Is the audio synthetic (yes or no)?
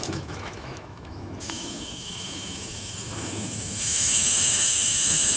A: yes